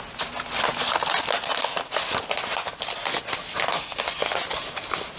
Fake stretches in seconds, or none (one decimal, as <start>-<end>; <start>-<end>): none